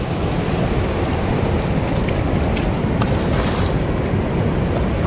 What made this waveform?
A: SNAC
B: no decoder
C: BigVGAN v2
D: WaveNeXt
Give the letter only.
B